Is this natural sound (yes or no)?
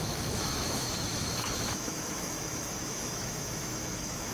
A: no